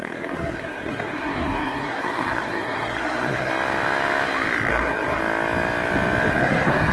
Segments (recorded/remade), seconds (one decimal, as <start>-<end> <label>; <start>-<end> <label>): 0.0-3.5 remade; 3.5-4.7 recorded; 4.7-5.2 remade; 5.2-6.3 recorded; 6.3-6.9 remade

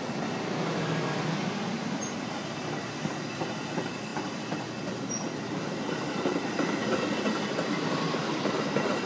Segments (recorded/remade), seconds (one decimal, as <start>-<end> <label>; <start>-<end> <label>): 0.0-9.1 recorded

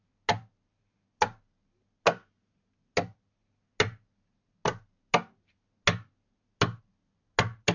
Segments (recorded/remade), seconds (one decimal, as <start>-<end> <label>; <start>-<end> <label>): 0.0-7.7 recorded

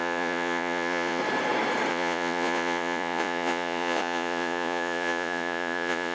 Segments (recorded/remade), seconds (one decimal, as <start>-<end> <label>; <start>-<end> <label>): 0.0-1.2 remade; 1.2-1.9 recorded; 1.9-6.1 remade

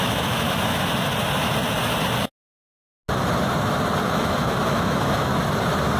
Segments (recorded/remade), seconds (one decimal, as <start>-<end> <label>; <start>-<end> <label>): 0.0-0.7 remade; 0.7-4.1 recorded; 4.1-5.3 remade; 5.3-6.0 recorded

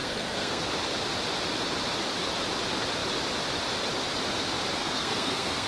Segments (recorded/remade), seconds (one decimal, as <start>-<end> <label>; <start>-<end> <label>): 0.0-0.7 remade; 0.7-4.8 recorded; 4.8-5.7 remade